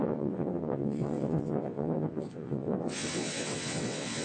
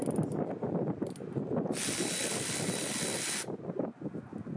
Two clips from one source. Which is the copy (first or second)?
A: first